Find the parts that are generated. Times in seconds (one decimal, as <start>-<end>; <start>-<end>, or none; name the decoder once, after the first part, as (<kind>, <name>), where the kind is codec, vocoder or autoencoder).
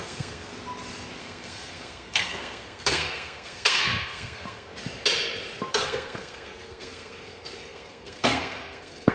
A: 0.0-0.5 (codec, SNAC); 1.2-4.7; 5.7-9.1